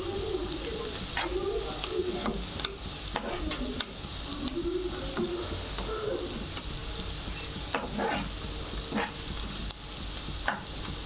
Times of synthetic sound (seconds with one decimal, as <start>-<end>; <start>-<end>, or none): 5.3-6.1